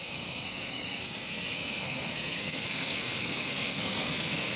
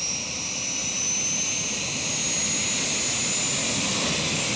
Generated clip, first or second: first